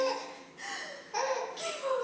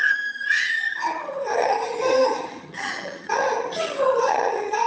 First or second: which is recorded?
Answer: first